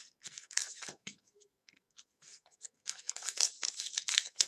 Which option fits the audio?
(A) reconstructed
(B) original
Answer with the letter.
A